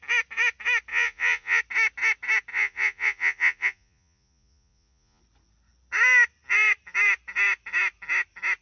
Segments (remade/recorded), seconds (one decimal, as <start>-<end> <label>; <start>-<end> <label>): 0.0-0.9 recorded; 0.9-1.6 remade; 1.6-2.5 recorded; 2.5-5.2 remade; 5.2-8.6 recorded